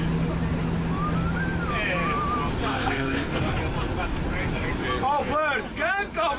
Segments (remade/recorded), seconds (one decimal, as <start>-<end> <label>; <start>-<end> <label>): 0.0-2.7 recorded; 2.7-3.4 remade; 3.4-6.4 recorded